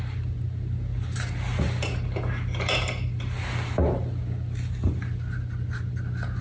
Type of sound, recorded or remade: recorded